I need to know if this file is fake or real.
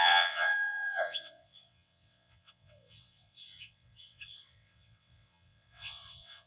fake